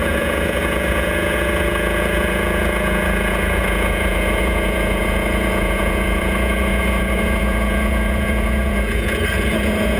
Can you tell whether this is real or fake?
fake